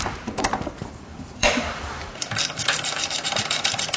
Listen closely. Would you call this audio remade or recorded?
remade